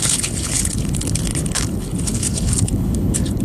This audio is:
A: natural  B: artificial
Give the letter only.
B